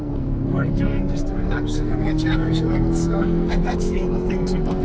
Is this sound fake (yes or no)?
yes